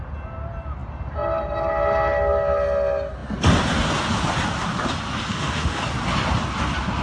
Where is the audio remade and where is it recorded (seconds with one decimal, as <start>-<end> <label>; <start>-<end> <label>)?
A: 0.0-5.3 recorded; 5.3-5.8 remade; 5.8-7.0 recorded